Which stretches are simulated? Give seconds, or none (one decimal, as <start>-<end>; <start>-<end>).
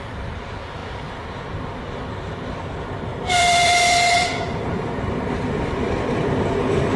3.1-5.3